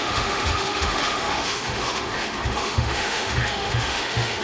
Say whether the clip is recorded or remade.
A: remade